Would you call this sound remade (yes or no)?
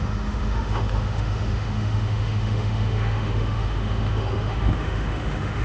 yes